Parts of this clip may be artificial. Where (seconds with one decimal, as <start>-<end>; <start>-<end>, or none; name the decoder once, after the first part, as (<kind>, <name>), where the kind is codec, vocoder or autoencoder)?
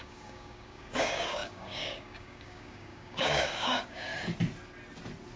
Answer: 0.0-4.1 (codec, DAC)